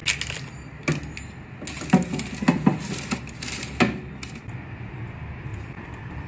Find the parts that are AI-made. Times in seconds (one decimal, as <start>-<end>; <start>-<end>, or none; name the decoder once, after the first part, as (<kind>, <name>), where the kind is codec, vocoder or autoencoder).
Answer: none